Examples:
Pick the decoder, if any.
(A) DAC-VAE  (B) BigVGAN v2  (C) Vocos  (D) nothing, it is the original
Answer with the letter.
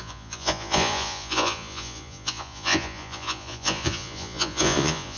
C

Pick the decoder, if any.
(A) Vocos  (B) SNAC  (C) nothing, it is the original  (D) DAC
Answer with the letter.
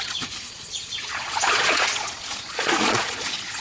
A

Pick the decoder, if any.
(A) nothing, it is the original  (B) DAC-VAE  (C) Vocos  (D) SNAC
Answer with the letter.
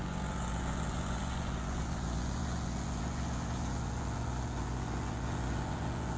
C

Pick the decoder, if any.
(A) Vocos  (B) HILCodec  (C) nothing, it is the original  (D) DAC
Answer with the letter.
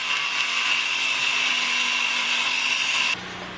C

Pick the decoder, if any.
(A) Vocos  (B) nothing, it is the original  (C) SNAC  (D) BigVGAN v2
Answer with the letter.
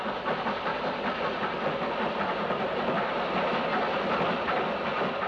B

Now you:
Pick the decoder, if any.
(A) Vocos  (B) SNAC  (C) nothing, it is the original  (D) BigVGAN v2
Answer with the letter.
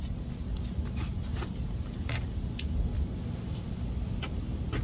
C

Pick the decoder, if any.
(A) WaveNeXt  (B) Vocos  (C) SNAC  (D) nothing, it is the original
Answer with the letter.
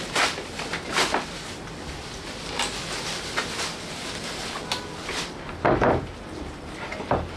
D